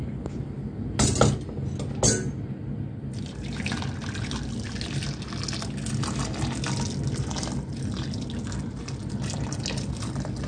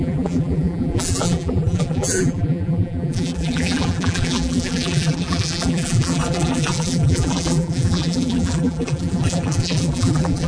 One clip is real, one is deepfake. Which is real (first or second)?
first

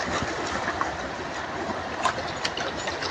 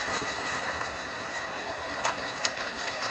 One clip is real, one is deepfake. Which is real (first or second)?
first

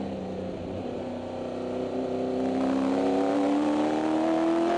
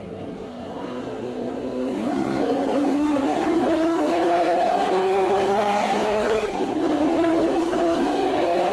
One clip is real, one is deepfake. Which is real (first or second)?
first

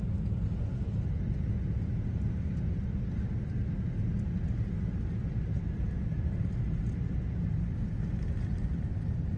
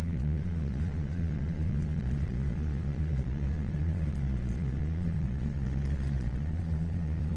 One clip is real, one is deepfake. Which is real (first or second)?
first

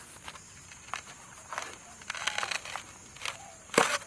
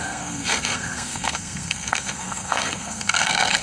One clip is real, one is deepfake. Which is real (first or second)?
first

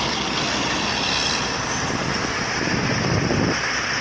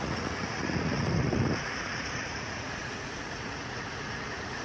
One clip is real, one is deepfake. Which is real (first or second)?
first